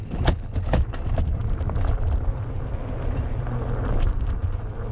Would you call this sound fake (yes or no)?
no